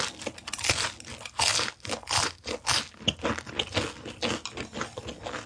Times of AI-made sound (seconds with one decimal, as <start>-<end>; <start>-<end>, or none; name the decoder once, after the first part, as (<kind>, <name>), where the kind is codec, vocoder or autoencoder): none